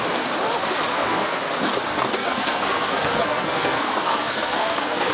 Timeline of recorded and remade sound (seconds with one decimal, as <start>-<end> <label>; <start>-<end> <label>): 0.0-0.9 recorded; 0.9-1.4 remade; 1.4-1.9 recorded; 1.9-5.1 remade